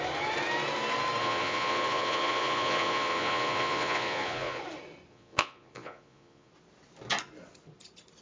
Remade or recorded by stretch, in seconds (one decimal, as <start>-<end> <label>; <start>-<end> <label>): 0.0-1.2 recorded; 1.2-4.6 remade; 4.6-5.1 recorded; 5.1-6.5 remade; 6.5-8.2 recorded